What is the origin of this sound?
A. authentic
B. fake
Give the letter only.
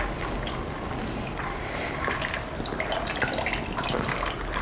A